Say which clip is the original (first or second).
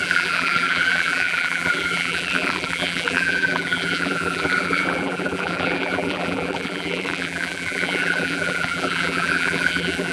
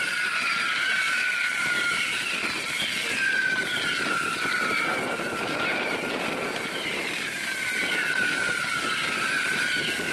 second